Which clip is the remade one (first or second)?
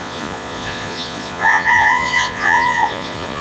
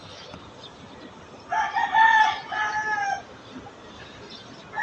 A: first